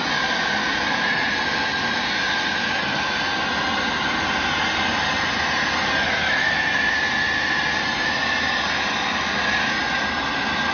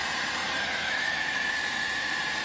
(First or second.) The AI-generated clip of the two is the second